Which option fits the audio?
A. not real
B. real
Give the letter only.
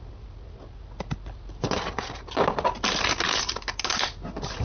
B